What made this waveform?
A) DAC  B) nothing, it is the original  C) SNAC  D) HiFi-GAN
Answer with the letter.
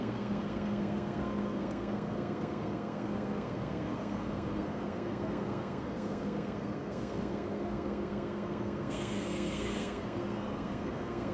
C